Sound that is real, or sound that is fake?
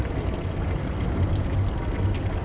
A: real